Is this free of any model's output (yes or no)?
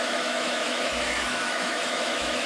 no